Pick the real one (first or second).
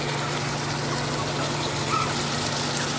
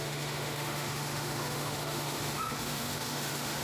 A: first